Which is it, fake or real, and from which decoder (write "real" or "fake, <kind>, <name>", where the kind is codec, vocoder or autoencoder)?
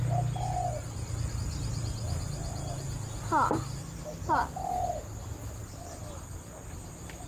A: real